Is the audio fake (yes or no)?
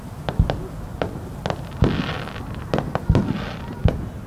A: no